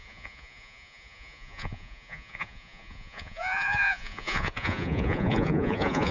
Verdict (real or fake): fake